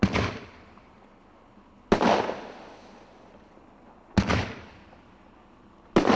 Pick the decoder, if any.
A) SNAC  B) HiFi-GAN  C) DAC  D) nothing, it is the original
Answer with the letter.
D